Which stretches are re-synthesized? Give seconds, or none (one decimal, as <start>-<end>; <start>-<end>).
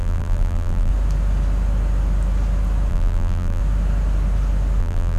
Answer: 0.0-0.9; 2.9-3.6; 4.8-5.2